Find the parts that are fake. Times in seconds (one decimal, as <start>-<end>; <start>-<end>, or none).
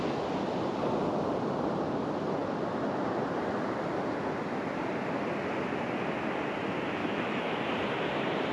7.0-7.6